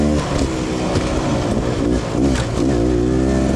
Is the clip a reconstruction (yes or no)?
no